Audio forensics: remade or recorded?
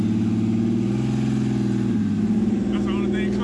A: recorded